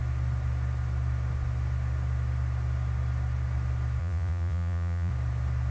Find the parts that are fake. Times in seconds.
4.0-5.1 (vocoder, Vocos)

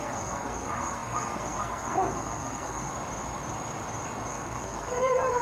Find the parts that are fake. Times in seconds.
0.0-2.9 (codec, SNAC); 4.3-5.4

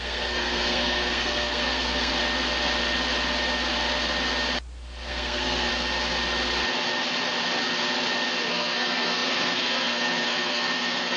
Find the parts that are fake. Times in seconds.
0.0-2.1 (codec, SNAC); 5.1-5.7; 8.5-11.2

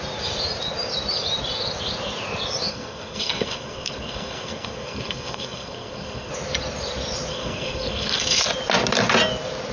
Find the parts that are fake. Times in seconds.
2.7-6.3 (codec, SNAC); 7.3-8.4

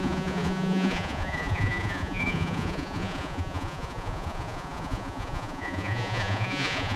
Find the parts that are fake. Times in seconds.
0.0-7.0 (vocoder, Vocos)

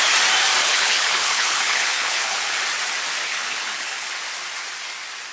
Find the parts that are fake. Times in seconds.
0.6-2.6 (codec, HILCodec); 3.3-4.1